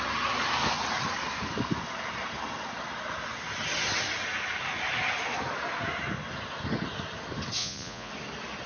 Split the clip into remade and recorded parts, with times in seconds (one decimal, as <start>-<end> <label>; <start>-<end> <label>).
0.0-7.6 recorded; 7.6-8.1 remade; 8.1-8.7 recorded